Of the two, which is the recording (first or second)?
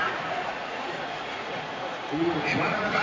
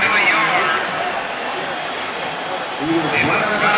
second